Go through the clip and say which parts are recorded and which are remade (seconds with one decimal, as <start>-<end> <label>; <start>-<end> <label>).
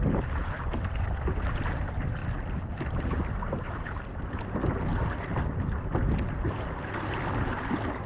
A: 0.0-2.2 recorded; 2.2-4.4 remade; 4.4-8.1 recorded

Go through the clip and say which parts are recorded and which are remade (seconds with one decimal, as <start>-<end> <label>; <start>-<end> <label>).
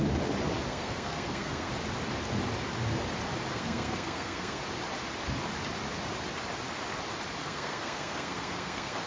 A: 0.0-0.7 recorded; 0.7-1.7 remade; 1.7-3.5 recorded; 3.5-4.6 remade; 4.6-7.4 recorded; 7.4-9.1 remade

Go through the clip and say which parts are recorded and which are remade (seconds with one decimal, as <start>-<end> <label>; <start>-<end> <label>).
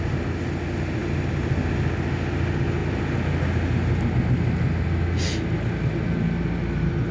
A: 0.0-7.1 recorded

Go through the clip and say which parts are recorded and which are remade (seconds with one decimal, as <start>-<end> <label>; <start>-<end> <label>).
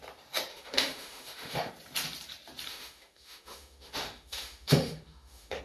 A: 0.0-0.5 recorded; 0.5-1.7 remade; 1.7-2.7 recorded; 2.7-5.6 remade